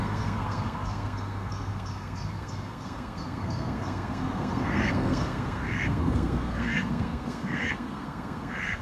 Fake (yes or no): yes